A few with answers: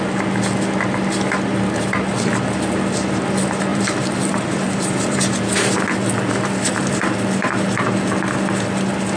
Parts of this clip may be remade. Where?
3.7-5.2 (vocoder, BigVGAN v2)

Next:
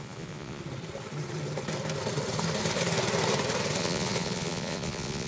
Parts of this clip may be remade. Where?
0.0-0.6 (vocoder, Vocos); 3.8-5.3

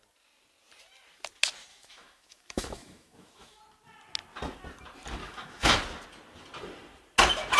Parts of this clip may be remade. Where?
1.7-3.6 (autoencoder, DAC-VAE); 5.2-5.8

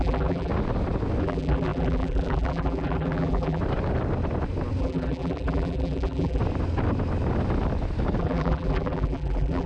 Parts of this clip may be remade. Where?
0.0-0.5 (vocoder, BigVGAN v2); 1.2-3.6; 4.8-6.4; 8.2-9.7

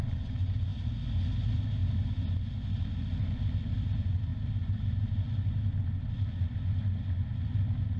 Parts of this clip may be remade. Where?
1.8-2.6 (vocoder, BigVGAN v2); 4.3-5.1